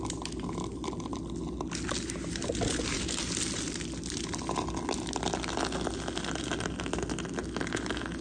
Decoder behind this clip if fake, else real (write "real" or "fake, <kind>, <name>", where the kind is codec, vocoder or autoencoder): real